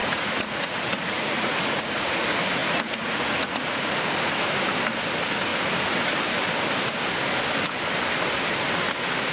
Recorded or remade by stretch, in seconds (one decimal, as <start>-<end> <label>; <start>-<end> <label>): 0.0-2.2 remade; 2.2-2.6 recorded; 2.6-4.0 remade; 4.0-5.5 recorded; 5.5-6.1 remade; 6.1-9.3 recorded